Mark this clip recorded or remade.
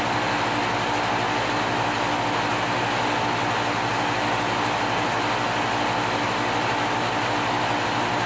recorded